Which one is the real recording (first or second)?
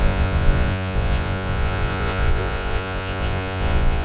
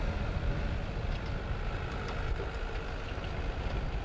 second